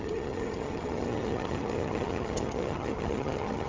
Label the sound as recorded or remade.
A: remade